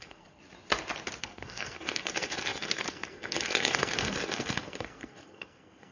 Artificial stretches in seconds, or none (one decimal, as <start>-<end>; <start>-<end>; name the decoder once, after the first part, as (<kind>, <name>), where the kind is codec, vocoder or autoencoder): 0.0-0.4 (codec, SNAC); 1.2-5.9